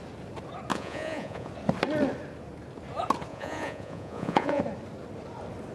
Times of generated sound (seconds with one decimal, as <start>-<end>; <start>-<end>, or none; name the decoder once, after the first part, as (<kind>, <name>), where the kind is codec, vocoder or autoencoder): 0.7-1.5 (vocoder, Vocos); 3.3-4.6

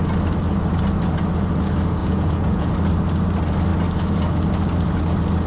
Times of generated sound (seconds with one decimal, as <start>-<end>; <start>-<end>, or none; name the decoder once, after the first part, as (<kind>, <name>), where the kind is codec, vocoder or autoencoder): 2.0-2.7 (vocoder, Vocos)

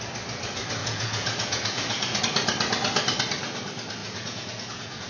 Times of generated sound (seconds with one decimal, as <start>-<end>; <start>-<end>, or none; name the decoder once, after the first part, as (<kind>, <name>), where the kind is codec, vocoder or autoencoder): 0.8-2.2 (vocoder, Vocos); 4.0-5.1

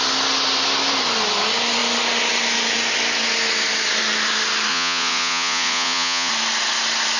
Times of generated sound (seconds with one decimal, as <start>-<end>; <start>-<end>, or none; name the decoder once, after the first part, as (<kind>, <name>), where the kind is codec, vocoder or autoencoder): 4.7-6.3 (vocoder, Vocos)

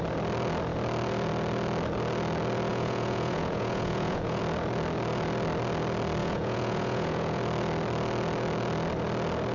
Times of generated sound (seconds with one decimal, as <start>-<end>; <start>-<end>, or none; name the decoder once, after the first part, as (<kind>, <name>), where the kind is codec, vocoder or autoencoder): 2.7-4.4 (vocoder, Vocos); 6.2-7.4